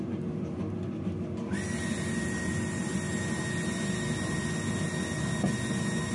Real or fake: real